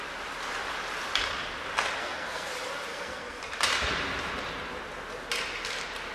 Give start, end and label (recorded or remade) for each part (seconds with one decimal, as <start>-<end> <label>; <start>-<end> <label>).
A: 0.0-2.0 recorded; 2.0-2.5 remade; 2.5-2.9 recorded; 2.9-3.4 remade; 3.4-6.1 recorded